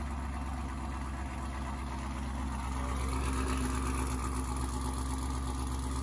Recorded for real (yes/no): yes